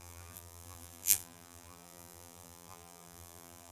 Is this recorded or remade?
remade